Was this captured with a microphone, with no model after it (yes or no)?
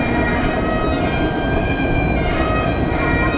no